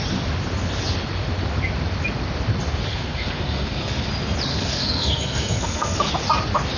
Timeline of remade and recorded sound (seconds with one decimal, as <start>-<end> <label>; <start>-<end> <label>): 0.0-2.9 recorded; 2.9-4.1 remade; 4.1-4.5 recorded; 4.5-6.1 remade; 6.1-6.8 recorded